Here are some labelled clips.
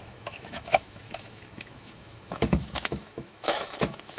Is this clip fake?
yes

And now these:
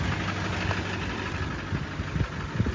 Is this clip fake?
no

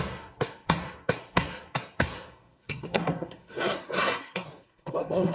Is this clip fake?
yes